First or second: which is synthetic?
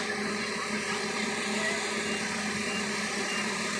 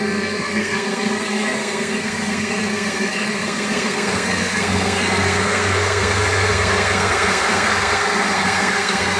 second